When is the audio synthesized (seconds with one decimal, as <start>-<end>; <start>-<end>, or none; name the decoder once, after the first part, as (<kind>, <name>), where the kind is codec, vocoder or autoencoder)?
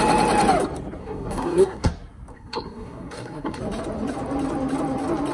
1.0-1.9 (codec, SNAC); 2.3-3.6